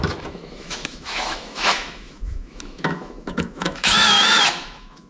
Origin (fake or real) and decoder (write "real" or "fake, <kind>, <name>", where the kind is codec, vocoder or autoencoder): fake, autoencoder, DAC-VAE